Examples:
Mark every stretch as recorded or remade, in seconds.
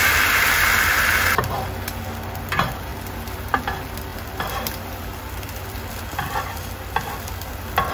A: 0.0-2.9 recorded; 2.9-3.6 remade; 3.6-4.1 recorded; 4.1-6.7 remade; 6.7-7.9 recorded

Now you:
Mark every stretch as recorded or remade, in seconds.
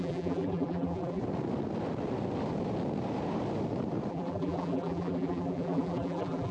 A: 0.0-1.2 remade; 1.2-4.1 recorded; 4.1-6.5 remade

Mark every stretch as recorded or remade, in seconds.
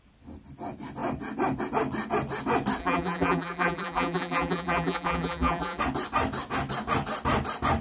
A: 0.0-2.8 recorded; 2.8-5.8 remade; 5.8-7.8 recorded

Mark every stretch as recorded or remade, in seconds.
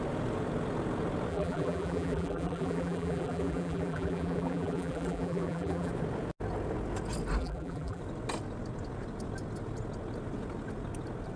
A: 0.0-1.3 recorded; 1.3-5.9 remade; 5.9-7.4 recorded; 7.4-8.0 remade; 8.0-11.4 recorded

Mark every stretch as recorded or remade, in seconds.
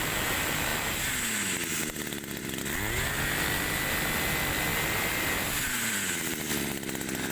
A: 0.0-4.7 recorded; 4.7-6.5 remade; 6.5-7.3 recorded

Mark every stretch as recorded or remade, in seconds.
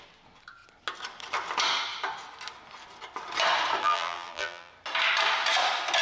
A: 0.0-3.8 recorded; 3.8-4.7 remade; 4.7-6.0 recorded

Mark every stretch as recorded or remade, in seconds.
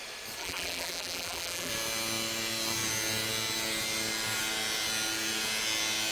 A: 0.0-0.4 recorded; 0.4-1.7 remade; 1.7-6.1 recorded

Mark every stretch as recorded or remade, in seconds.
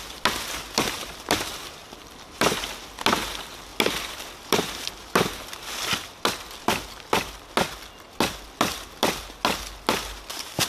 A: 0.0-1.8 recorded; 1.8-2.6 remade; 2.6-10.7 recorded